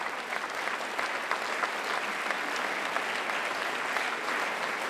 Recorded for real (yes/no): yes